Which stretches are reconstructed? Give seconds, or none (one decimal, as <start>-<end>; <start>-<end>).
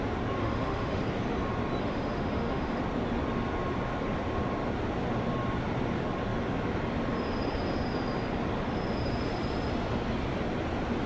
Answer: 0.4-1.0; 1.8-2.8